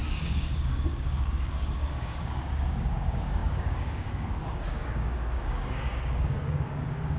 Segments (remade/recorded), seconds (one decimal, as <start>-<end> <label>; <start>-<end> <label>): 0.0-7.2 remade